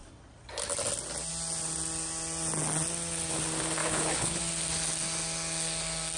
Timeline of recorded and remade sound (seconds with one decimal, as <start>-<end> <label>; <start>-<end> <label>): 0.0-3.8 recorded; 3.8-4.4 remade; 4.4-6.2 recorded